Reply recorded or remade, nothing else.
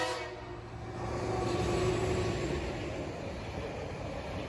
recorded